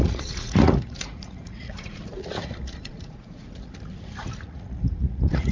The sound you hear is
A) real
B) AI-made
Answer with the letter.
B